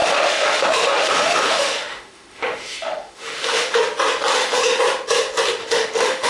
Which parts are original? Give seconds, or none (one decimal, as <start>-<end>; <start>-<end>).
3.8-4.3; 4.8-5.6